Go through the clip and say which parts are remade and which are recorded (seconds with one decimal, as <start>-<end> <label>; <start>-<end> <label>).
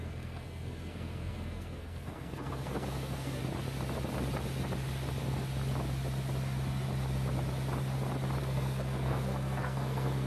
0.0-3.4 remade; 3.4-8.4 recorded; 8.4-10.3 remade